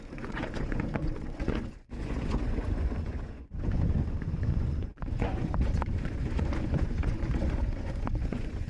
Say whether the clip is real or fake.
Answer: fake